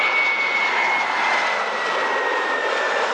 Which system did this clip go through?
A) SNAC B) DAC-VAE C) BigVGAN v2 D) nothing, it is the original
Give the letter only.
D